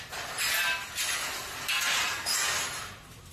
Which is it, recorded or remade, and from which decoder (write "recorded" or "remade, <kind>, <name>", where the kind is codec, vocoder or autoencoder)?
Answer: recorded